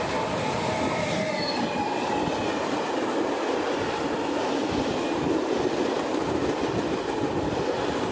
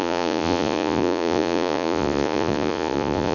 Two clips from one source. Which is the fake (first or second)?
second